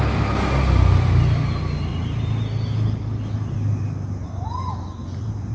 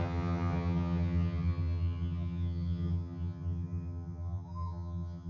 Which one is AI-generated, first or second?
second